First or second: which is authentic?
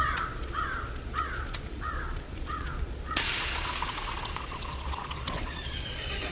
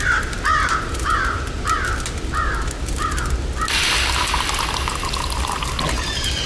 second